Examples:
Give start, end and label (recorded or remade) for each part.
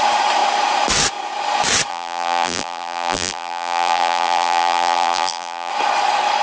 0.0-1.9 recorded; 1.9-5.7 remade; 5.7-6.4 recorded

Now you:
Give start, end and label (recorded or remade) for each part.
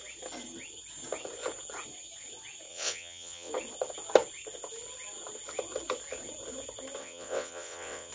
0.0-2.7 recorded; 2.7-3.5 remade; 3.5-7.0 recorded; 7.0-8.1 remade